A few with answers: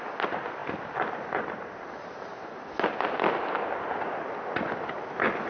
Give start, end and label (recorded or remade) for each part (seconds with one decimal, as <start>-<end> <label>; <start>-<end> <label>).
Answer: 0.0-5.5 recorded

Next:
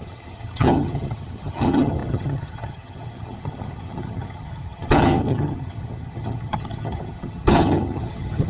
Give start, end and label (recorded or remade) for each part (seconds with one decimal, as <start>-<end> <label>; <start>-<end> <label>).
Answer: 0.0-8.5 remade

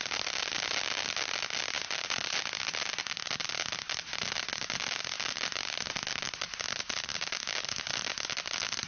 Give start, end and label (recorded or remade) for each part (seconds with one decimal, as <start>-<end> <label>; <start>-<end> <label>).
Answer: 0.0-8.9 recorded

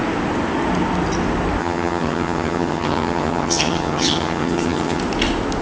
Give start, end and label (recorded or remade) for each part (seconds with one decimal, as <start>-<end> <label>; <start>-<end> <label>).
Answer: 0.0-1.6 recorded; 1.6-5.0 remade; 5.0-5.6 recorded

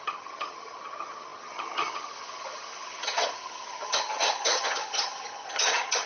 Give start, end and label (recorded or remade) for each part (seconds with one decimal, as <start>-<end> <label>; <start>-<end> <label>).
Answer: 0.0-6.1 remade

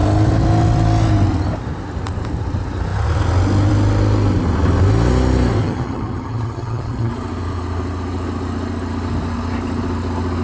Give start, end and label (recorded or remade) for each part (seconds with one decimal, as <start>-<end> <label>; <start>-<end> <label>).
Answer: 0.0-5.6 recorded; 5.6-7.1 remade; 7.1-10.4 recorded

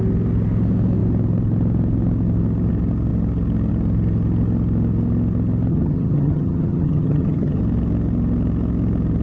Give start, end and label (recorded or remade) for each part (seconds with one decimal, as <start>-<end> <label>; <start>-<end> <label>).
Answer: 0.0-5.7 recorded; 5.7-7.6 remade; 7.6-9.2 recorded

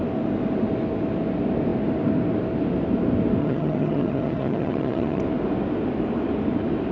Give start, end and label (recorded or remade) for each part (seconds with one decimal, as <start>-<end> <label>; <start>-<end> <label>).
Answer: 0.0-3.4 recorded; 3.4-5.2 remade; 5.2-6.9 recorded